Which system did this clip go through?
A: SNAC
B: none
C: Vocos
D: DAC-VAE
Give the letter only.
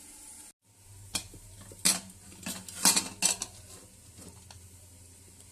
B